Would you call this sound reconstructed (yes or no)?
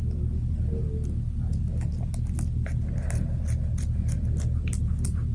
no